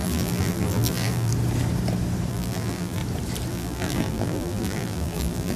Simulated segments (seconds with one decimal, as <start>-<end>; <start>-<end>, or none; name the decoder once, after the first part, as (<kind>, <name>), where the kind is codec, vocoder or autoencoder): 0.0-1.3 (vocoder, BigVGAN v2); 2.3-3.0; 3.5-5.6